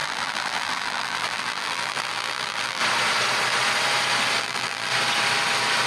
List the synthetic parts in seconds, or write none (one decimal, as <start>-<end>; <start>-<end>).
0.0-2.8; 4.4-4.9